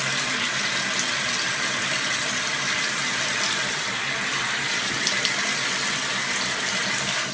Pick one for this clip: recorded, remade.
remade